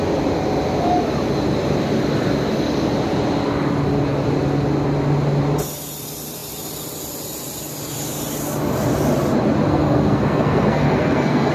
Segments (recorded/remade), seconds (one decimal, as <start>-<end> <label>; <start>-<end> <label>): 0.0-9.7 recorded; 9.7-11.5 remade